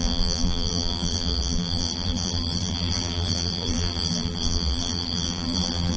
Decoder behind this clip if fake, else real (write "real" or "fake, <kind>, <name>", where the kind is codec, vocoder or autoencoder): fake, vocoder, BigVGAN v2